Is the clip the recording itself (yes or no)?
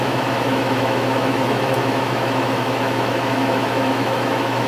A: no